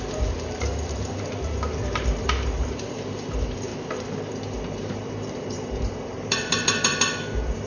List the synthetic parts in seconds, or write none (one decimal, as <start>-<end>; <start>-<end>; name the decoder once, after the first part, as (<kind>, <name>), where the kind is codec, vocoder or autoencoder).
0.0-3.7 (vocoder, BigVGAN v2); 4.3-7.7